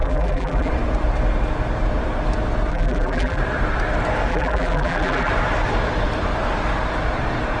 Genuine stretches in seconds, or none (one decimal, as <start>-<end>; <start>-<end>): 0.7-2.7; 3.4-4.3; 5.3-7.6